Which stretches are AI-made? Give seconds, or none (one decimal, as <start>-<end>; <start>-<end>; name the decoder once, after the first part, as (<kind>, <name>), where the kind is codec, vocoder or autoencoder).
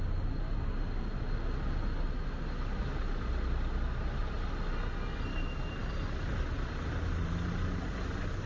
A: none